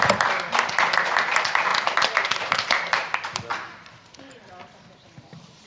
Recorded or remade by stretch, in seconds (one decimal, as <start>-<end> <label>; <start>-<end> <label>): 0.0-3.5 remade; 3.5-4.0 recorded; 4.0-5.7 remade